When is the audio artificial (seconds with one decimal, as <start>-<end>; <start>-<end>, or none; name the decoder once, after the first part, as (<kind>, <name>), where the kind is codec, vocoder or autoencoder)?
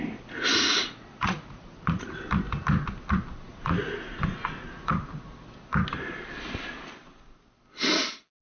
0.8-2.3 (vocoder, Vocos); 3.5-4.9